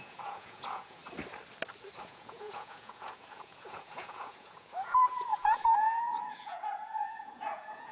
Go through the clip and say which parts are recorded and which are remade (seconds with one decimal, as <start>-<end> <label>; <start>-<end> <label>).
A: 0.0-1.0 remade; 1.0-2.0 recorded; 2.0-7.9 remade